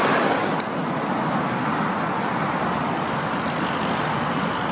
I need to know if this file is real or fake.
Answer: real